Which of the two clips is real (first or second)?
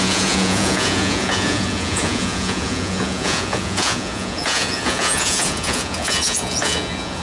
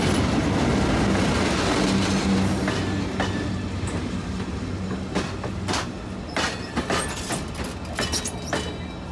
second